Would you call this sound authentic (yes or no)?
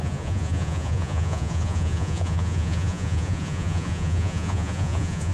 no